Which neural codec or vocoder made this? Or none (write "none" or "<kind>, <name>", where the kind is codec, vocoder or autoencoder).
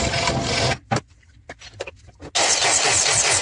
none